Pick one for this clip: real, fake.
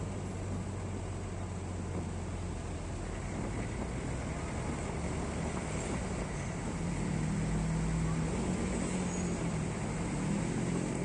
real